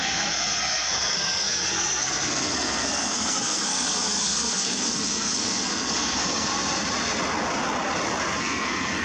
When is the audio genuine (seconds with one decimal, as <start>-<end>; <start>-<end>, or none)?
6.5-8.4